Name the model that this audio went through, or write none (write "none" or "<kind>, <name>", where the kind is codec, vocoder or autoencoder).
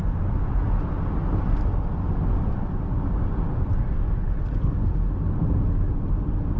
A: none